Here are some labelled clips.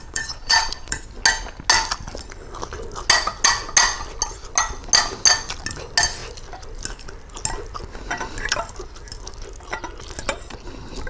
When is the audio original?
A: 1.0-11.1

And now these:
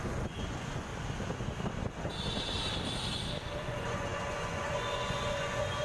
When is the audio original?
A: 0.9-3.6

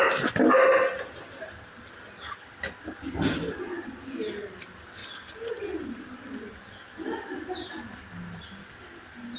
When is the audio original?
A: 0.0-9.4

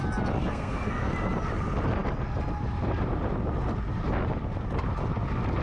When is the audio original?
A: 0.0-0.5; 1.1-5.6

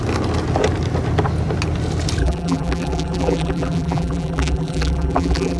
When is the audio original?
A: 0.0-2.2

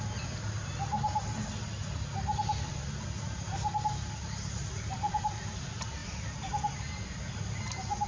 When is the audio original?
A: 0.0-8.1

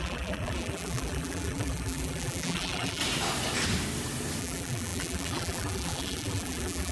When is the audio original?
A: 3.0-4.4